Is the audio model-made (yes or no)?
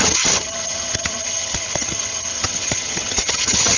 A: yes